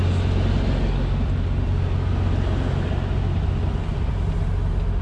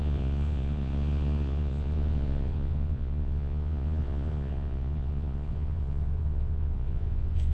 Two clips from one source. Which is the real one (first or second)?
first